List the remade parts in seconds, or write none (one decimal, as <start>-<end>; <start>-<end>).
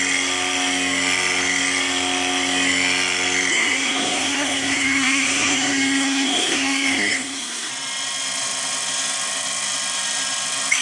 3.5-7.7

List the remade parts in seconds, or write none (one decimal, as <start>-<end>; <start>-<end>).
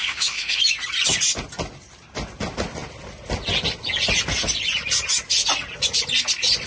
0.0-0.6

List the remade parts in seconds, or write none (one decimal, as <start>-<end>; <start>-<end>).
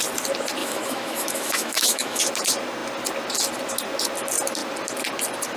0.6-2.2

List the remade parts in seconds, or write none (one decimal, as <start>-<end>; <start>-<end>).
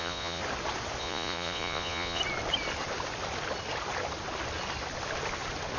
0.0-0.4; 1.0-2.2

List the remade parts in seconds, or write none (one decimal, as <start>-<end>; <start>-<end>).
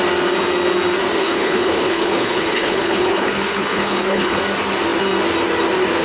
1.2-4.4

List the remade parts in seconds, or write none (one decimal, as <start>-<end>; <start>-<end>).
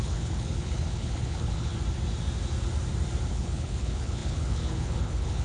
0.0-1.7; 3.3-5.4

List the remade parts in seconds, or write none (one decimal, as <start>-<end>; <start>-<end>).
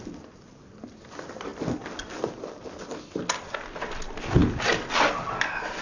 none